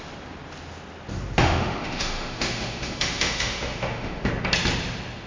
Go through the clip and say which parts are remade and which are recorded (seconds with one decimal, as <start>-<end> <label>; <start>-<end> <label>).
0.0-1.4 recorded; 1.4-4.3 remade; 4.3-5.3 recorded